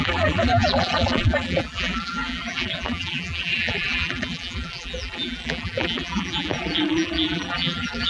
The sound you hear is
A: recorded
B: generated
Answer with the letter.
B